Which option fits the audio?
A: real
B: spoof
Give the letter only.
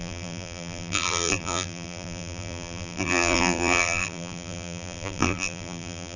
B